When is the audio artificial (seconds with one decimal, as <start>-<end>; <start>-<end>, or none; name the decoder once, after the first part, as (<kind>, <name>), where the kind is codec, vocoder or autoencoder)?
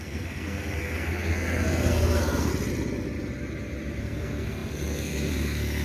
0.0-2.5 (codec, SNAC); 4.0-5.8